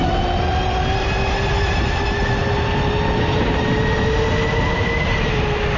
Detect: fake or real real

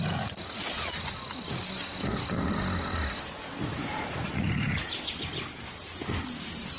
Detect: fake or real real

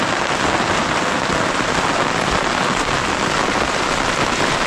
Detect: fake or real real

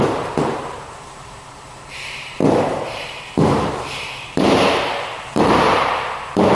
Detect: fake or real fake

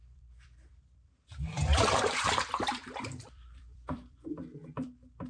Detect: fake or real fake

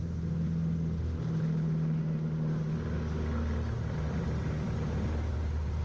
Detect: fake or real real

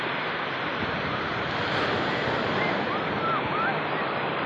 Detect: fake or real fake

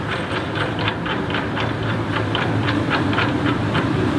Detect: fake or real fake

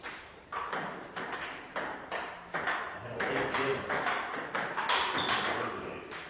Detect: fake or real fake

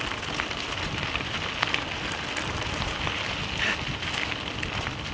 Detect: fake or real real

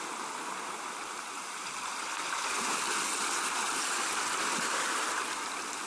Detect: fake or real real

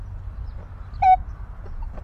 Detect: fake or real real